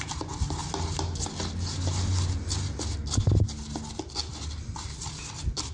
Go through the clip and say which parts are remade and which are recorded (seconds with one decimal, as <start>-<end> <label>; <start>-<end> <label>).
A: 0.0-0.6 remade; 0.6-4.0 recorded; 4.0-5.7 remade